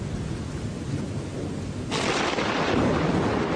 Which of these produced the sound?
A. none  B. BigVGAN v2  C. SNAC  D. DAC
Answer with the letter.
A